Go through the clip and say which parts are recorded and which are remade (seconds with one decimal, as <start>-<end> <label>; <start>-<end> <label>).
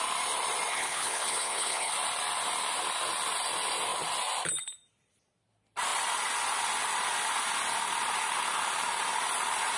0.0-0.7 recorded; 0.7-1.9 remade; 1.9-9.8 recorded